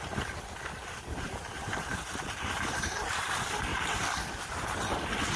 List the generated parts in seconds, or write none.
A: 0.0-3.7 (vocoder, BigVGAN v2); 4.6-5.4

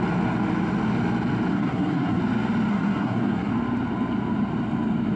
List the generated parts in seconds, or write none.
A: 1.5-2.2 (codec, SNAC); 2.7-3.5

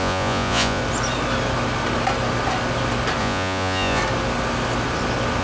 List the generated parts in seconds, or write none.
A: 0.0-0.8 (vocoder, Vocos); 3.2-4.0

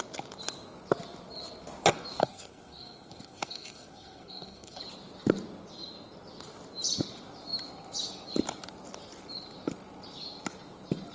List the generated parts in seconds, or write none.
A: 2.2-4.8 (codec, SNAC)

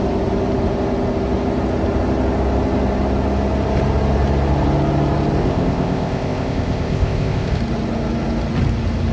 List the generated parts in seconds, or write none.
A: 5.4-7.6 (codec, ZipCodec)